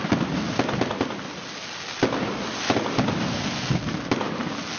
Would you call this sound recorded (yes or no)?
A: yes